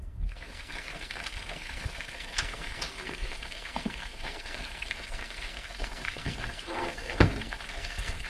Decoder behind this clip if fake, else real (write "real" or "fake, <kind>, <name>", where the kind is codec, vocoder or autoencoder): fake, codec, SNAC